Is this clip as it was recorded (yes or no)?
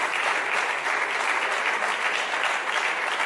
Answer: yes